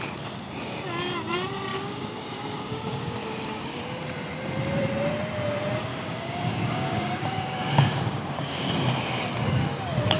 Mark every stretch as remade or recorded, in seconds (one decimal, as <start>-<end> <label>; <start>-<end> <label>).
0.0-1.7 recorded; 1.7-3.8 remade; 3.8-5.9 recorded; 5.9-8.7 remade; 8.7-10.2 recorded